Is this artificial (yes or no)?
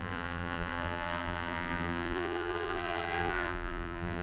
yes